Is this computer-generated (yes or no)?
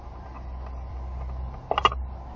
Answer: no